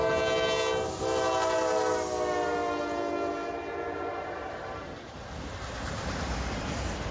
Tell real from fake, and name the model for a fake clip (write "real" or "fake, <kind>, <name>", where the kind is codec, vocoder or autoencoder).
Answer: real